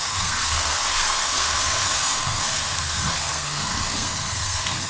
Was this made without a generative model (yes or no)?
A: no